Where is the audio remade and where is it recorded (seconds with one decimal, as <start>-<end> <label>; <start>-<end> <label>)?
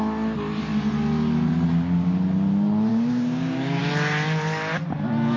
0.0-2.9 recorded; 2.9-3.8 remade; 3.8-5.4 recorded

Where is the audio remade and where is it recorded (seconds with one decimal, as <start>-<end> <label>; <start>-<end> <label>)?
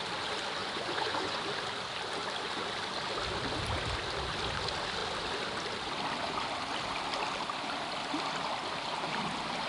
0.0-0.6 recorded; 0.6-1.4 remade; 1.4-9.7 recorded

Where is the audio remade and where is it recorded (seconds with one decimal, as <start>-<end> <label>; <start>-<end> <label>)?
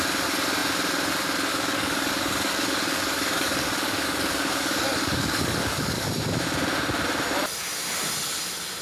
0.0-1.5 recorded; 1.5-6.1 remade; 6.1-8.8 recorded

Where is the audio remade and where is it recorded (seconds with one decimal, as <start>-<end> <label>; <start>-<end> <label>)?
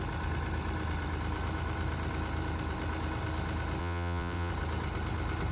0.0-3.8 recorded; 3.8-4.5 remade; 4.5-5.5 recorded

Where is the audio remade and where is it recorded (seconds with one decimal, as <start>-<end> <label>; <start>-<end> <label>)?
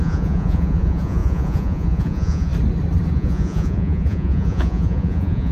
0.0-2.5 remade; 2.5-3.1 recorded; 3.1-5.5 remade